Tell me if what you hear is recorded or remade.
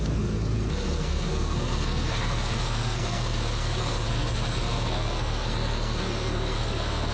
remade